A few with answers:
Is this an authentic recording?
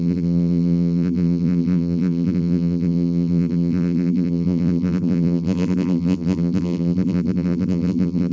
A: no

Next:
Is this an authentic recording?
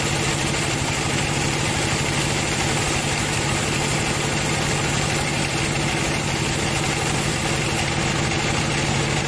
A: yes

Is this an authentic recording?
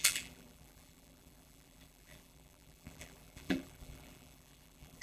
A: no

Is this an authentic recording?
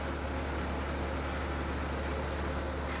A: yes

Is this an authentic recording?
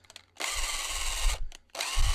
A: yes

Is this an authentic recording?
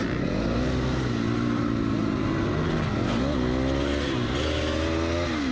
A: yes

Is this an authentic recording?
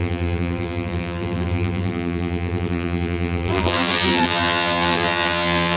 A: no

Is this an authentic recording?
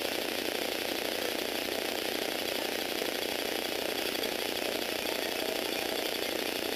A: no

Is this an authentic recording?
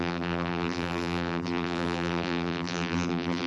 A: no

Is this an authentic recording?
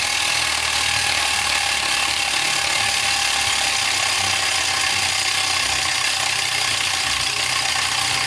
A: yes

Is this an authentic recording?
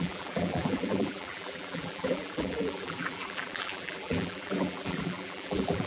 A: no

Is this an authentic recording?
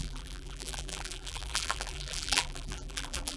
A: no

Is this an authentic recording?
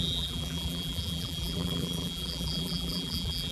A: no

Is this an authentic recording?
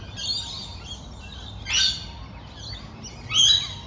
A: yes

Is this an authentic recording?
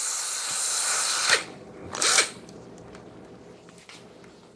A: no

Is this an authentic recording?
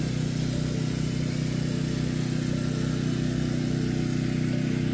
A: yes